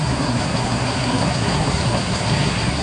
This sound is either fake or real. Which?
fake